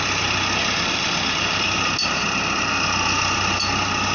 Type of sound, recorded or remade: recorded